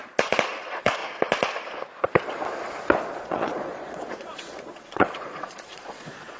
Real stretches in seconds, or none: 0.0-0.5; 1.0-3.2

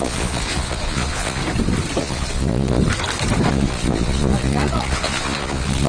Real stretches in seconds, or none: 1.4-2.0; 2.8-3.5

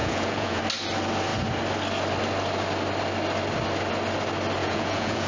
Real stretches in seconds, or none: 0.6-4.6

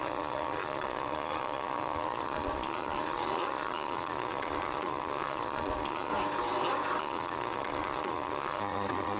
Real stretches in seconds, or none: 6.1-7.0

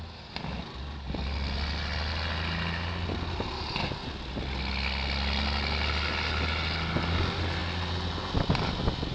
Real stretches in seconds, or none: 0.0-9.1